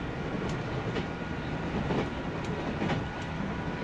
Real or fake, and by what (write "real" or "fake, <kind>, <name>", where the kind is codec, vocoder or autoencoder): real